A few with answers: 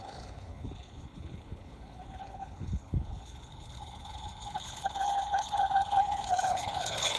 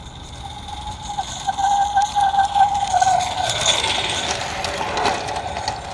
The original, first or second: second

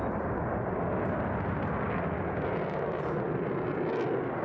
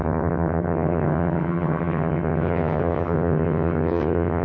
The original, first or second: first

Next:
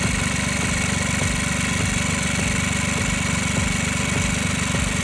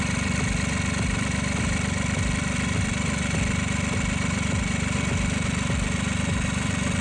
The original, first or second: first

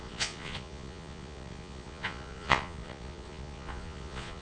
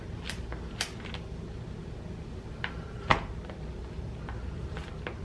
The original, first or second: second